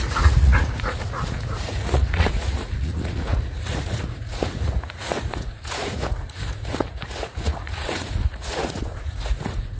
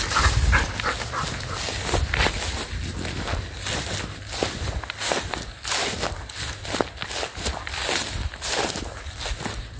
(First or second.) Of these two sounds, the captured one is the second